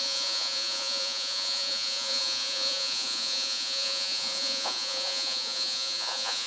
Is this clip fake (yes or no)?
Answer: yes